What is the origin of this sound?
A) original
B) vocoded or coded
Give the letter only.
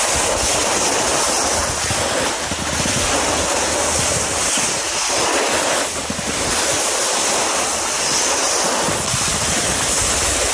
A